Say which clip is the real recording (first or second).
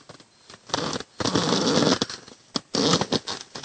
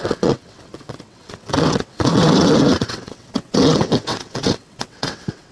first